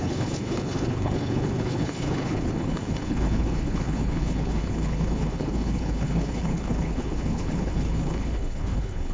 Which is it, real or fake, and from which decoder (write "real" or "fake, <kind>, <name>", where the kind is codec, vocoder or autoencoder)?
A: fake, codec, HILCodec